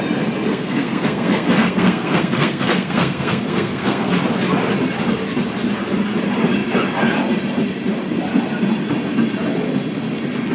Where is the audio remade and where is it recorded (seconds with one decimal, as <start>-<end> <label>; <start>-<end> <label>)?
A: 0.0-0.5 recorded; 0.5-4.1 remade; 4.1-10.5 recorded